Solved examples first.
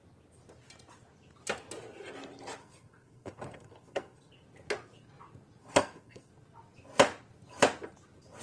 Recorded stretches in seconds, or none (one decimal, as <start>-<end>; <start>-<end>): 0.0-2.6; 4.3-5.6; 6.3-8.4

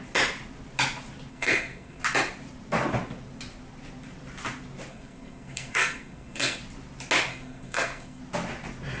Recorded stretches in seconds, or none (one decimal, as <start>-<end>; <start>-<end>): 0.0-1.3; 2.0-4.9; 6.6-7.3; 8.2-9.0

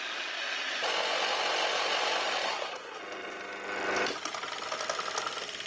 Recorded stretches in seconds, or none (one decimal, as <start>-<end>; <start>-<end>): 0.0-2.5; 3.0-5.7

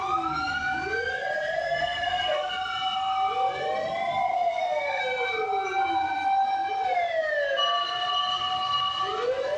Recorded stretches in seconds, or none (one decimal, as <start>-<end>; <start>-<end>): 0.0-1.8; 2.5-4.3; 5.0-9.6

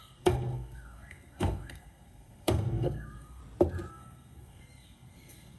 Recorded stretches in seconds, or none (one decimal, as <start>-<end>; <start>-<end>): 3.4-3.9